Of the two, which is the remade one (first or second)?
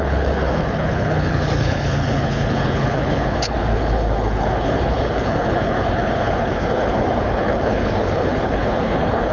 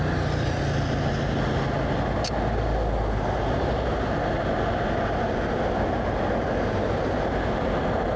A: first